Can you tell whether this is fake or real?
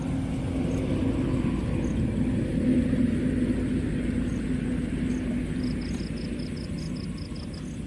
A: real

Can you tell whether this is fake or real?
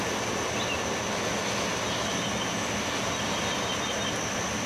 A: real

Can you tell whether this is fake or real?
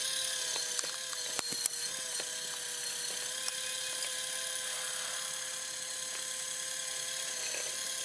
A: real